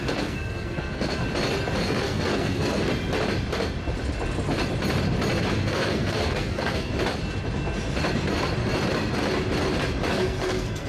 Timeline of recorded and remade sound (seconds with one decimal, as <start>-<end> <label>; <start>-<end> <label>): 0.0-1.2 remade; 1.2-1.8 recorded; 1.8-2.9 remade; 2.9-5.5 recorded; 5.5-6.9 remade; 6.9-10.1 recorded; 10.1-10.9 remade